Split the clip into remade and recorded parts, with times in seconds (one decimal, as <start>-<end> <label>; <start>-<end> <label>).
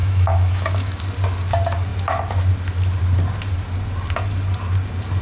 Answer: 0.0-1.0 remade; 1.0-5.2 recorded